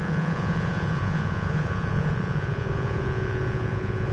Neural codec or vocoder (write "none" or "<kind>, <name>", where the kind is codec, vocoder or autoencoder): vocoder, Vocos